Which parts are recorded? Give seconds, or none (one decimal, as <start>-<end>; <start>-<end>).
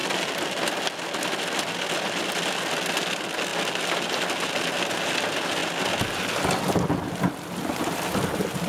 0.0-8.7